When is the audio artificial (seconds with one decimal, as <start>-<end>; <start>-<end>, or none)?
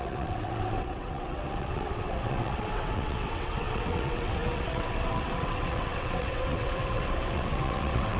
0.0-8.2